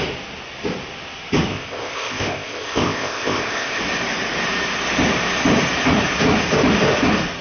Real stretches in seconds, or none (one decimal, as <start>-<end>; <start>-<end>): 0.0-1.5; 3.8-7.4